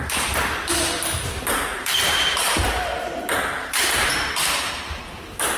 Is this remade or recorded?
remade